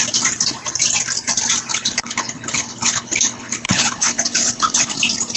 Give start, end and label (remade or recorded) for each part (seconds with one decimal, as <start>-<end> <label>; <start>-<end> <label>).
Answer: 0.0-1.7 recorded; 1.7-4.9 remade; 4.9-5.4 recorded